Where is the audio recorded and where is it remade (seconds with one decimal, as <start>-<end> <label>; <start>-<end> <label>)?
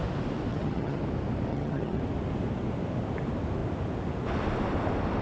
0.0-0.5 recorded; 0.5-1.0 remade; 1.0-1.5 recorded; 1.5-2.0 remade; 2.0-5.2 recorded